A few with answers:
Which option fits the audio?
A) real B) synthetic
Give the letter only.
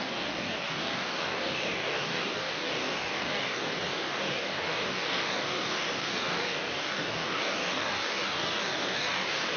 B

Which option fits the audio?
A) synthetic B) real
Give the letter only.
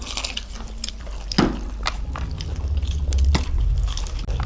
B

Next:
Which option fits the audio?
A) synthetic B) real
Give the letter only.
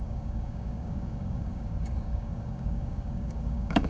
A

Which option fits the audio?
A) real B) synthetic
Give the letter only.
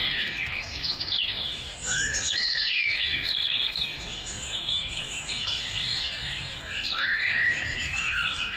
B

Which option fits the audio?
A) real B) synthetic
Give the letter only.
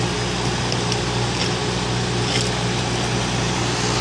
A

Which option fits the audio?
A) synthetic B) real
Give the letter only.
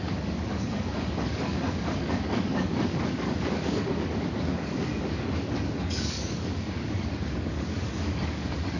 A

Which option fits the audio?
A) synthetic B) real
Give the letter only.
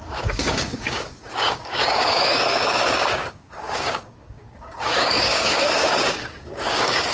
A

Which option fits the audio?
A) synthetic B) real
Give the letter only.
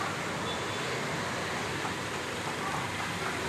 B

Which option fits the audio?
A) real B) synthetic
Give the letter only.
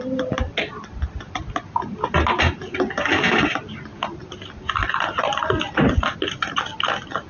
A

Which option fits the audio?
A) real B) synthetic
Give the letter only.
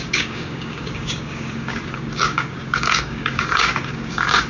B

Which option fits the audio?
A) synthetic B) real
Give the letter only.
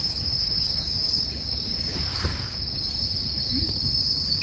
A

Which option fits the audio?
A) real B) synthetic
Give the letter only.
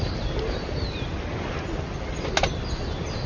A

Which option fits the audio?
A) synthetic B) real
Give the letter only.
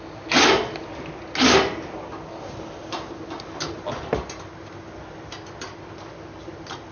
B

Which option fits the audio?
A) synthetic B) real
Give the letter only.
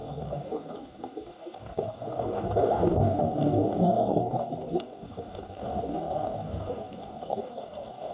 A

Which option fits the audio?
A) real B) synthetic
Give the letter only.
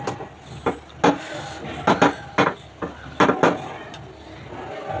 A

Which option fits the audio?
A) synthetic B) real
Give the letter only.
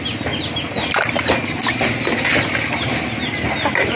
B